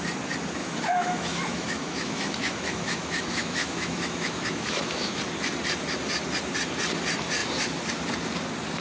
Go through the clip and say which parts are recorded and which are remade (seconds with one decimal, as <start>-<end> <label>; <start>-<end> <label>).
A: 0.0-0.6 recorded; 0.6-5.2 remade; 5.2-8.8 recorded